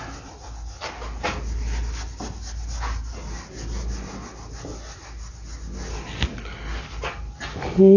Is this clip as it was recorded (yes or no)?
yes